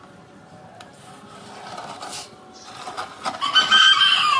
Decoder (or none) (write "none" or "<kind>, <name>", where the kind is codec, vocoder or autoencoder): none